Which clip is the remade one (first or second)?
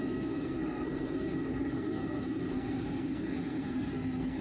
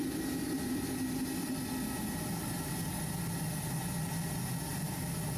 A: first